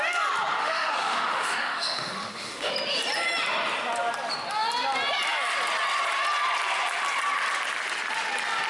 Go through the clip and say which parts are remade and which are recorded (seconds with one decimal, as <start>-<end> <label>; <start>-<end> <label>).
0.0-0.6 recorded; 0.6-2.7 remade; 2.7-8.7 recorded